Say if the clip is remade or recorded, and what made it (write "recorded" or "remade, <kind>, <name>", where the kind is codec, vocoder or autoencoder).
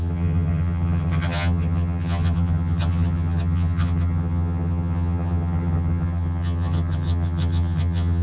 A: remade, vocoder, HiFi-GAN